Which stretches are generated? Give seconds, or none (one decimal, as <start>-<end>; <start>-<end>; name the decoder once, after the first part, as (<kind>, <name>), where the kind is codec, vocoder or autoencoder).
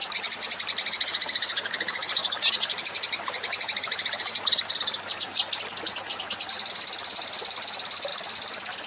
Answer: none